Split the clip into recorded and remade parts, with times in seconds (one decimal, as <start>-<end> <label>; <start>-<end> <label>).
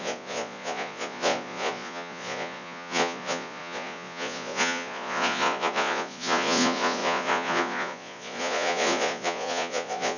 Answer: 0.0-10.2 remade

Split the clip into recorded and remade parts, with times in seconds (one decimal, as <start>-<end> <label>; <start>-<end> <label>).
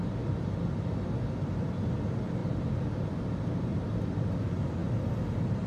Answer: 0.0-5.7 recorded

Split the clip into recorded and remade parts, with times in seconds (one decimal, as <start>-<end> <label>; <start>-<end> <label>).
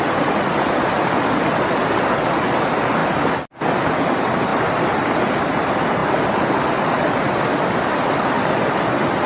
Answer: 0.0-9.3 recorded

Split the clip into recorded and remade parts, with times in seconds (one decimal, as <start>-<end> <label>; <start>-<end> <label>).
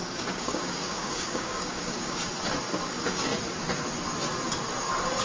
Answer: 0.0-2.2 remade; 2.2-2.9 recorded; 2.9-3.3 remade; 3.3-5.2 recorded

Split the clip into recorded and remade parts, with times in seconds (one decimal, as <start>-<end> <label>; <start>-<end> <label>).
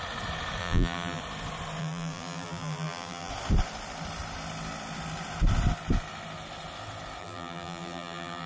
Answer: 0.0-0.6 recorded; 0.6-1.2 remade; 1.2-1.8 recorded; 1.8-3.3 remade; 3.3-7.2 recorded; 7.2-8.5 remade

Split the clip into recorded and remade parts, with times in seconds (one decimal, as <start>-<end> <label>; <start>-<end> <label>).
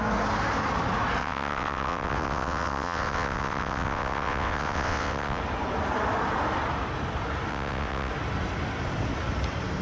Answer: 0.0-1.2 recorded; 1.2-5.4 remade; 5.4-7.5 recorded; 7.5-8.1 remade; 8.1-9.8 recorded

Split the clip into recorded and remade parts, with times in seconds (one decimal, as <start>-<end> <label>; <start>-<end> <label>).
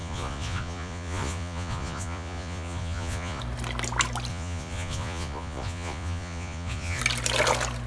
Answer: 0.0-3.4 remade; 3.4-4.3 recorded; 4.3-7.0 remade; 7.0-7.9 recorded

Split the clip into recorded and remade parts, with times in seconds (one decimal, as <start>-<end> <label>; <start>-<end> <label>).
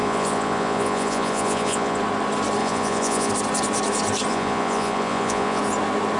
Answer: 0.0-2.0 remade; 2.0-2.6 recorded; 2.6-3.3 remade; 3.3-4.3 recorded; 4.3-5.6 remade; 5.6-6.2 recorded